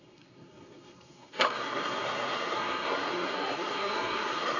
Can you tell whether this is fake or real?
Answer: fake